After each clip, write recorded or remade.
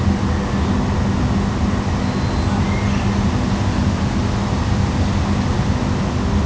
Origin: recorded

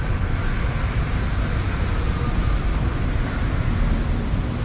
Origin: recorded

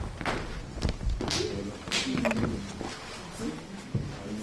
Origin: recorded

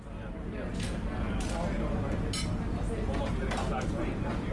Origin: recorded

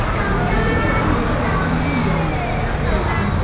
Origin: recorded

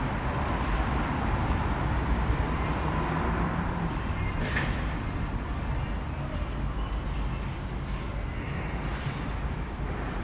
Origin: remade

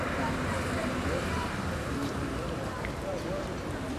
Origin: remade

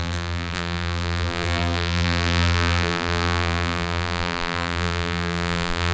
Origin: remade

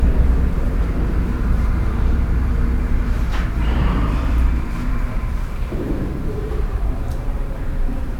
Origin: remade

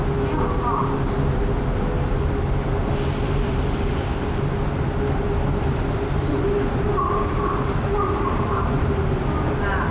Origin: recorded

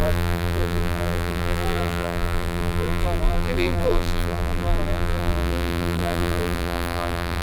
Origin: remade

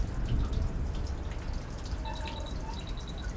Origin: remade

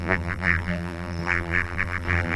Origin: remade